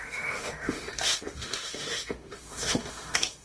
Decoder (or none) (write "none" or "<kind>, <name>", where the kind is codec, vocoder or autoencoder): autoencoder, DAC-VAE